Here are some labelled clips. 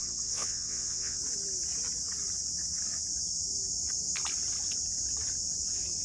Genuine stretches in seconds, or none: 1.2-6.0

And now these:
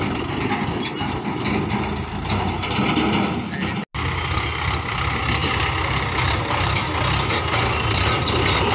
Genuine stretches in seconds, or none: 0.0-8.7

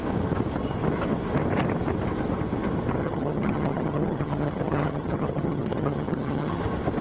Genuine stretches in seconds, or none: 0.0-3.0; 6.6-7.0

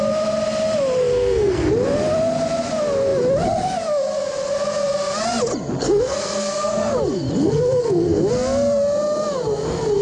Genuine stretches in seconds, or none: 0.0-1.0; 1.7-5.8; 6.9-7.4; 8.2-10.0